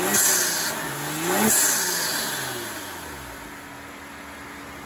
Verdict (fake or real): real